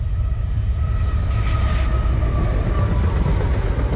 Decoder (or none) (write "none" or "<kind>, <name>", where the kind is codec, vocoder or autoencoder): none